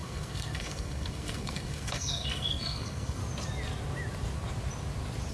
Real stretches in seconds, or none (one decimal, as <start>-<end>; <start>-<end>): 3.2-5.3